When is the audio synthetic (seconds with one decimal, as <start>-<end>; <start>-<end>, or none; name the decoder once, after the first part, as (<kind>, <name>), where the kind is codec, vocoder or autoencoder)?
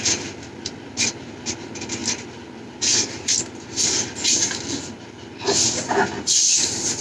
none